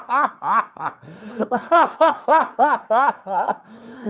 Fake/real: fake